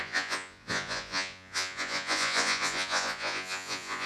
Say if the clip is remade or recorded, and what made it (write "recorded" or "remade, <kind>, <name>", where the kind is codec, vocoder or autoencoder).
remade, vocoder, Vocos